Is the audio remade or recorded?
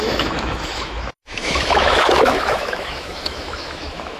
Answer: remade